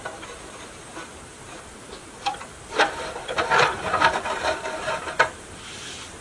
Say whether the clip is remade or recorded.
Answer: remade